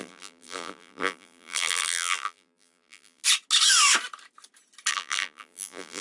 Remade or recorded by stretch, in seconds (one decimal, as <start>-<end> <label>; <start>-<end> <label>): 0.0-3.2 remade; 3.2-4.9 recorded; 4.9-6.0 remade